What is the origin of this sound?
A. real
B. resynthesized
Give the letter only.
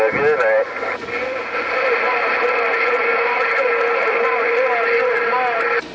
A